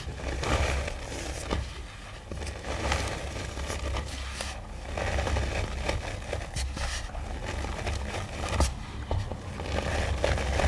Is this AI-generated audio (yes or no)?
no